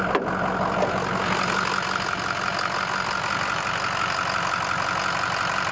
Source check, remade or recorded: recorded